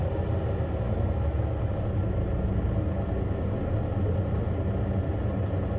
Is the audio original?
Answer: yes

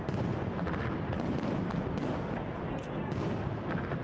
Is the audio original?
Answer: yes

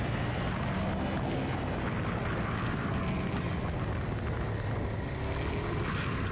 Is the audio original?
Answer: yes